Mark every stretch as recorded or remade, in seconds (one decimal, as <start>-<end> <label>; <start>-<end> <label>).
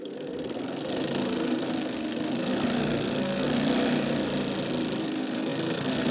0.0-3.7 remade; 3.7-5.0 recorded; 5.0-6.1 remade